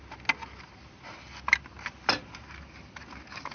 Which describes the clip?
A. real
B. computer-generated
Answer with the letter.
A